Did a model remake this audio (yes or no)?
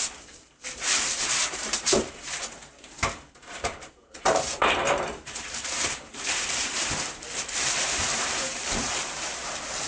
yes